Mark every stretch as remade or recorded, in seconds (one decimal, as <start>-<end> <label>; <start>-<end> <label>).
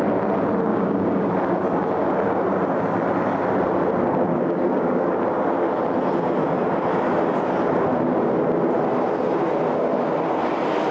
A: 0.0-0.7 recorded; 0.7-1.3 remade; 1.3-4.3 recorded; 4.3-5.1 remade; 5.1-10.9 recorded